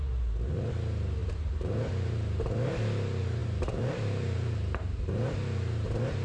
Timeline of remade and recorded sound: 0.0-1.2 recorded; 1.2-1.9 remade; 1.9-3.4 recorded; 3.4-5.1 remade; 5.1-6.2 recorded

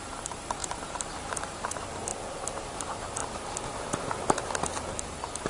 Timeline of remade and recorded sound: 0.0-2.1 remade; 2.1-2.8 recorded; 2.8-3.2 remade; 3.2-4.9 recorded; 4.9-5.5 remade

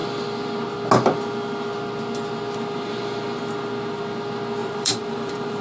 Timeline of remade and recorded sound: 0.0-4.6 recorded; 4.6-5.6 remade

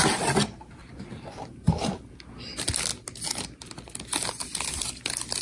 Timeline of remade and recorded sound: 0.0-0.8 recorded; 0.8-2.1 remade; 2.1-5.4 recorded

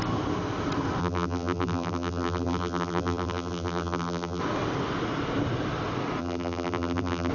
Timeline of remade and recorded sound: 0.0-1.0 recorded; 1.0-4.4 remade; 4.4-6.2 recorded; 6.2-7.3 remade

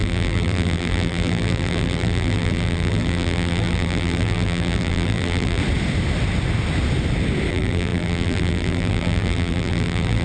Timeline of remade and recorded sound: 0.0-5.6 remade; 5.6-7.5 recorded; 7.5-10.2 remade

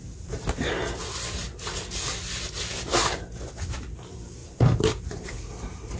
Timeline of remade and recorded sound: 0.0-0.7 remade; 0.7-4.4 recorded; 4.4-6.0 remade

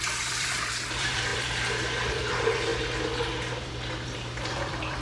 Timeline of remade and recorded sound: 0.0-2.7 remade; 2.7-3.6 recorded; 3.6-5.0 remade